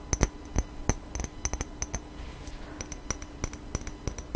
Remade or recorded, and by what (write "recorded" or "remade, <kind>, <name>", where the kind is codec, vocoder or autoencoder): recorded